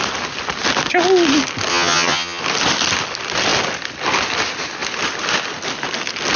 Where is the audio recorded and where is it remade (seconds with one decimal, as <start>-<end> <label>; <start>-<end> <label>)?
0.0-1.7 recorded; 1.7-2.4 remade; 2.4-6.4 recorded